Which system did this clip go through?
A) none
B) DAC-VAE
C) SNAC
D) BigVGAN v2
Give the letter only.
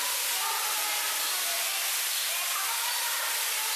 A